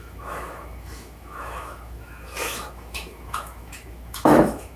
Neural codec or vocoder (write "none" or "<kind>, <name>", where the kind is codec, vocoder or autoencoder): autoencoder, DAC-VAE